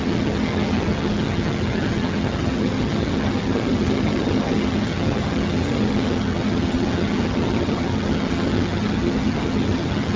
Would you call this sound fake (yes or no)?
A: yes